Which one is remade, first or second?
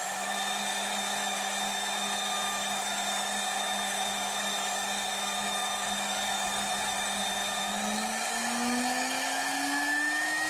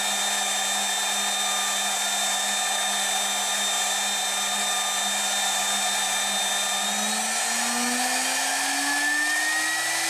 first